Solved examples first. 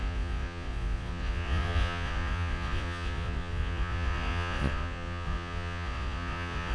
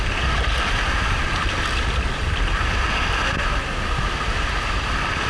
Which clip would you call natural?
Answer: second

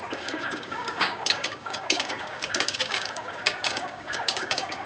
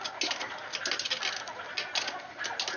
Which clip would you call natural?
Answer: second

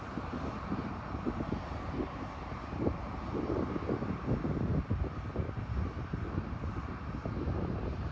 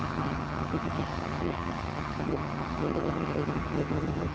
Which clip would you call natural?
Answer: first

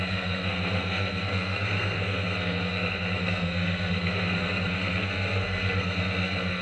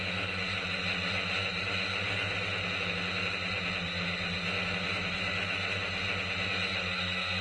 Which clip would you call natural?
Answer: second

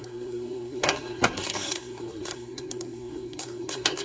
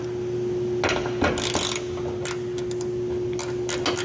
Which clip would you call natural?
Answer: second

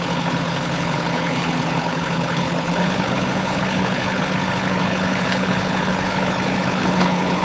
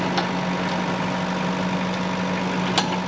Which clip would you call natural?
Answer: second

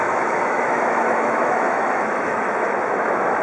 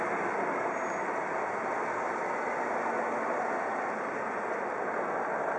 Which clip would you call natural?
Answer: second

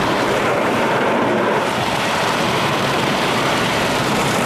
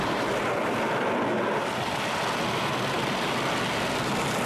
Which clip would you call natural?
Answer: second